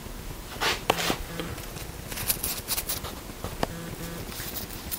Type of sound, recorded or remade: recorded